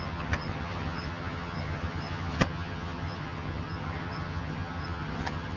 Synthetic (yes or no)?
yes